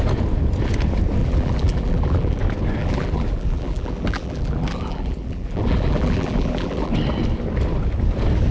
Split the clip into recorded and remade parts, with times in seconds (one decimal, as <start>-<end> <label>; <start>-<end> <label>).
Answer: 0.0-1.2 recorded; 1.2-2.4 remade; 2.4-2.8 recorded; 2.8-6.9 remade; 6.9-8.5 recorded

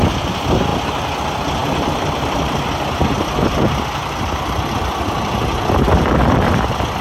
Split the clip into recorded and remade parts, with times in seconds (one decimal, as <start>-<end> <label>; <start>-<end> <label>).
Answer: 0.0-1.6 recorded; 1.6-2.7 remade; 2.7-4.0 recorded; 4.0-4.7 remade; 4.7-7.0 recorded

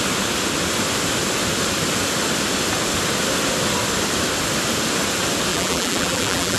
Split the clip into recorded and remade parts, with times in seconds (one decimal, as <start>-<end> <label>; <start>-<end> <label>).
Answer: 0.0-5.5 recorded; 5.5-6.6 remade

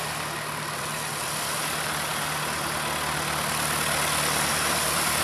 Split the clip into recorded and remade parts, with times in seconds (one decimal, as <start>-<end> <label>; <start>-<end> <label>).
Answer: 0.0-2.1 remade; 2.1-4.5 recorded; 4.5-5.2 remade

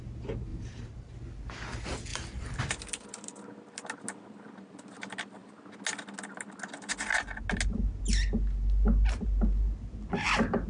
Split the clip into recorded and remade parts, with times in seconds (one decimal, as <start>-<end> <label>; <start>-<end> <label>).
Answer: 0.0-0.5 recorded; 0.5-1.1 remade; 1.1-2.1 recorded; 2.1-2.6 remade; 2.6-10.7 recorded

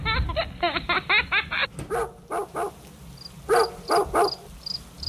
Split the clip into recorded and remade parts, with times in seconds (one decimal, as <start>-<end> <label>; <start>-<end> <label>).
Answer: 0.0-5.1 recorded

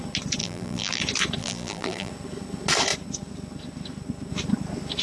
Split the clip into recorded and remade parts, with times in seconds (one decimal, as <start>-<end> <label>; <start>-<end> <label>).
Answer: 0.0-0.4 recorded; 0.4-1.0 remade; 1.0-1.4 recorded; 1.4-2.1 remade; 2.1-5.0 recorded